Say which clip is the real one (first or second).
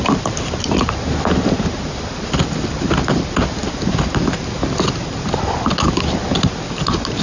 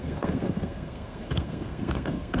first